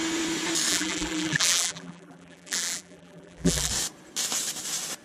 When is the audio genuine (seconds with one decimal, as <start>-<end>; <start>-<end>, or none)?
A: 0.0-0.7; 3.7-5.0